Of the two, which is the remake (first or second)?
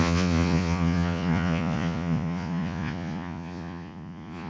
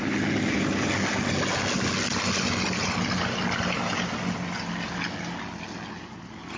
first